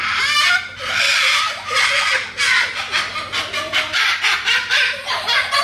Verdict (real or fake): real